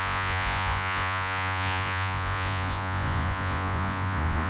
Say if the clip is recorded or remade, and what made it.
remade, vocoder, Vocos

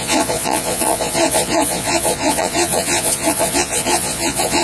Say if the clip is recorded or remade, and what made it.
remade, vocoder, Vocos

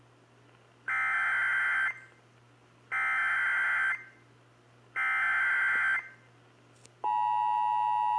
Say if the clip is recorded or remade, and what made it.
recorded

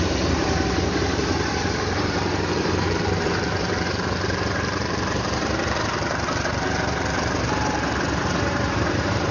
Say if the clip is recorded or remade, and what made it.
remade, vocoder, BigVGAN v2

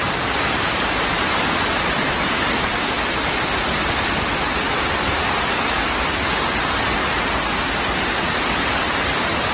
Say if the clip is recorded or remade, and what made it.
recorded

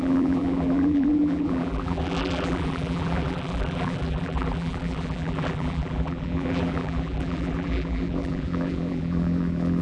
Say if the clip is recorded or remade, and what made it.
remade, vocoder, BigVGAN v2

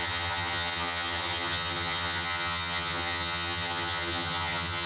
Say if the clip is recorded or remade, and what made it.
remade, vocoder, HiFi-GAN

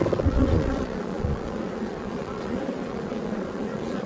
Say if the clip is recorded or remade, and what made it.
remade, vocoder, Vocos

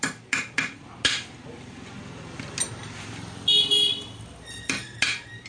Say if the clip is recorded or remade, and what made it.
recorded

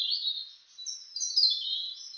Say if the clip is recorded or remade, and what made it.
recorded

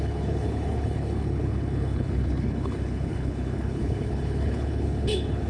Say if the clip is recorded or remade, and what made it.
remade, codec, HILCodec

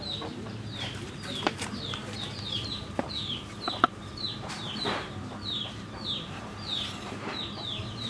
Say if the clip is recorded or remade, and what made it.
remade, vocoder, BigVGAN v2